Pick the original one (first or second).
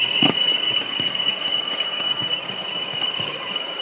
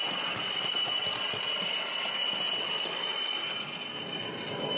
second